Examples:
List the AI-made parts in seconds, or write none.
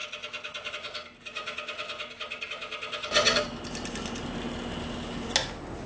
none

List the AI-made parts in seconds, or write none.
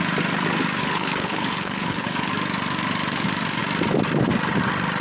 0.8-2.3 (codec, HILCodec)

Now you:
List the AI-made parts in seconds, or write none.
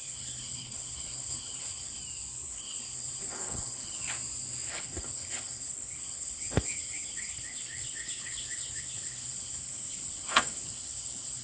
0.0-2.0 (codec, HILCodec); 2.5-4.0; 4.7-11.4